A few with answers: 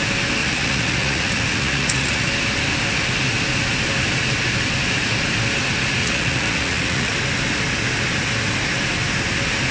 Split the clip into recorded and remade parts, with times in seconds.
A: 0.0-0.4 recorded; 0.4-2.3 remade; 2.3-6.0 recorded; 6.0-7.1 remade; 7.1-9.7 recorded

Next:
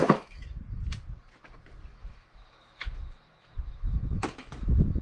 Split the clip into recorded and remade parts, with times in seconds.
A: 0.0-0.6 remade; 0.6-1.9 recorded; 1.9-5.0 remade

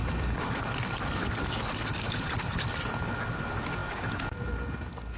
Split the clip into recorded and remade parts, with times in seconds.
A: 0.0-2.9 remade; 2.9-5.2 recorded